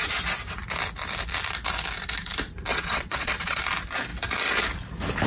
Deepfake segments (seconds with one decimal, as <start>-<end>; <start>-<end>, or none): 2.7-3.6